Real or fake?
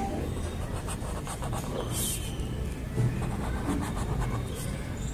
real